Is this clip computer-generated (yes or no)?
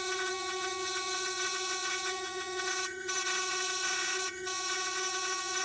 yes